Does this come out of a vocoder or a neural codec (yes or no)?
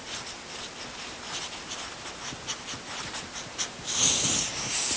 no